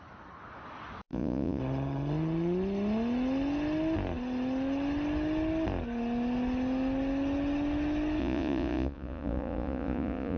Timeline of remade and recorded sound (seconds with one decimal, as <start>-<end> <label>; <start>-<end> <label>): 0.0-1.1 recorded; 1.1-1.6 remade; 1.6-8.2 recorded; 8.2-10.4 remade

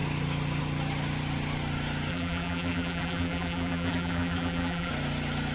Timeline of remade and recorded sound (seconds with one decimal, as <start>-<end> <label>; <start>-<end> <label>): 0.0-2.1 recorded; 2.1-4.9 remade; 4.9-5.5 recorded

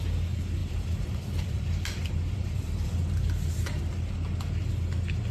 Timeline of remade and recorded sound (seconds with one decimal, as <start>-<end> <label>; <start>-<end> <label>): 0.0-0.6 recorded; 0.6-3.8 remade; 3.8-5.3 recorded

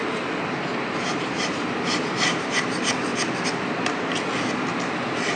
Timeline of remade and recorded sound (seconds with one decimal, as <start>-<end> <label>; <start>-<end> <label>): 0.0-2.5 remade; 2.5-5.4 recorded

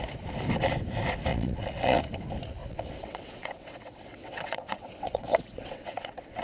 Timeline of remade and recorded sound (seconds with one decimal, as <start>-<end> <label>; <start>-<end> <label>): 0.0-1.3 recorded; 1.3-2.0 remade; 2.0-2.6 recorded; 2.6-6.4 remade

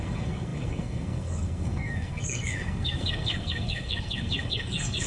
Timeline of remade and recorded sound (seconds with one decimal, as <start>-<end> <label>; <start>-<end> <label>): 0.0-5.1 remade

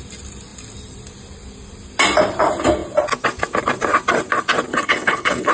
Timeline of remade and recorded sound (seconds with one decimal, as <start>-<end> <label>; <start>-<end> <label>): 0.0-4.7 recorded; 4.7-5.5 remade

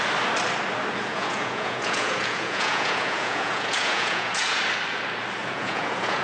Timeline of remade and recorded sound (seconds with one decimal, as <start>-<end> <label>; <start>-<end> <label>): 0.0-1.1 recorded; 1.1-4.6 remade; 4.6-5.4 recorded; 5.4-6.2 remade